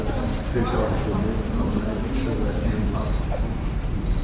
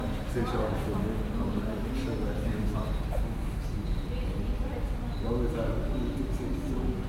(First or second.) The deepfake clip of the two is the first